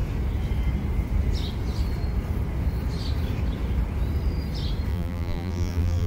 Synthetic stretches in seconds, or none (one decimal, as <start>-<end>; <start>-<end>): 4.9-6.1